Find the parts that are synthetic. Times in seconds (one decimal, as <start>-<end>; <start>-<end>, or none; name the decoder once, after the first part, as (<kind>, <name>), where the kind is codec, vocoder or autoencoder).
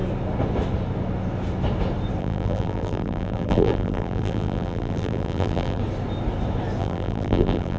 2.2-5.8 (vocoder, BigVGAN v2); 6.8-7.8